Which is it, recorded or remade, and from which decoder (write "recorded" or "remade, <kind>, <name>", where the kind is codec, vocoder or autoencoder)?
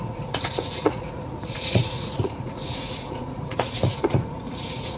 remade, vocoder, Vocos